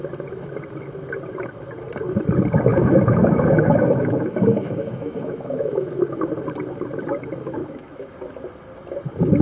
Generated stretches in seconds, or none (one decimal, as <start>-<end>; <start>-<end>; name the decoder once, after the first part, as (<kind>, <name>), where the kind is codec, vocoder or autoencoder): 2.7-6.3 (autoencoder, DAC-VAE); 7.6-8.1